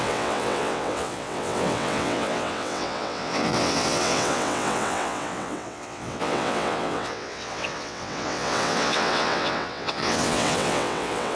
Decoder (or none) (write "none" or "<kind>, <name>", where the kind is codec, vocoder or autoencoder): vocoder, WaveNeXt